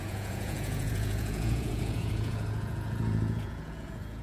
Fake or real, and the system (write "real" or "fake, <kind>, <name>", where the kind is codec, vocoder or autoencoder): fake, vocoder, Vocos